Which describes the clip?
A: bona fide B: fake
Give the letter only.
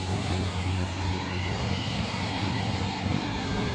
B